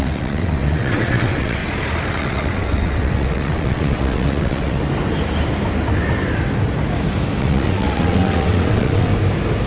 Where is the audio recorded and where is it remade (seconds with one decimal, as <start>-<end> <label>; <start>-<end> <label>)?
0.0-1.6 remade; 1.6-2.1 recorded; 2.1-4.8 remade; 4.8-7.4 recorded; 7.4-9.1 remade; 9.1-9.7 recorded